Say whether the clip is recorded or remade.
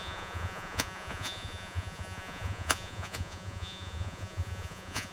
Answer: remade